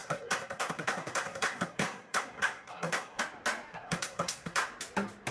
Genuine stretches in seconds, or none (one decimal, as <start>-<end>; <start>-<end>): 3.2-3.7; 4.7-5.3